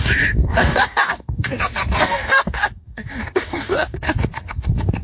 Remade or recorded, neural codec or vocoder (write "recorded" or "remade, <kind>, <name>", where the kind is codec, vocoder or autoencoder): remade, codec, DAC